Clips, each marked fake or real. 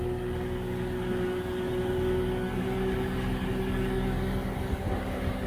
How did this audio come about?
fake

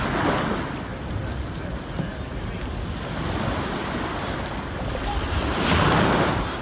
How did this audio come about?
real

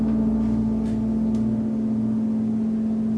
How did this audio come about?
real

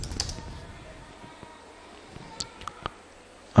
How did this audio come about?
real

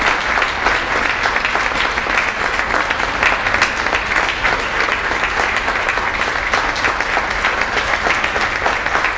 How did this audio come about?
real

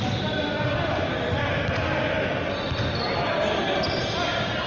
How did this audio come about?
real